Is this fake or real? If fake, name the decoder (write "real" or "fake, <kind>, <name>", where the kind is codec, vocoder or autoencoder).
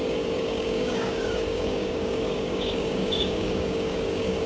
fake, codec, DAC